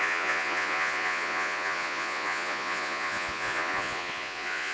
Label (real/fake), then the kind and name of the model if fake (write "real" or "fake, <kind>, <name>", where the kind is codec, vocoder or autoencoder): fake, vocoder, Vocos